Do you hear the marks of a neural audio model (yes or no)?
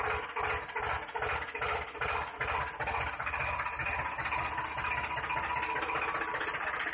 no